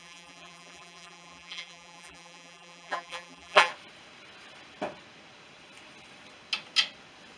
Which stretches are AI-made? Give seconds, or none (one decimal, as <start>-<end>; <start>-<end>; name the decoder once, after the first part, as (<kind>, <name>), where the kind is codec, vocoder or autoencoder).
0.0-3.7 (vocoder, BigVGAN v2)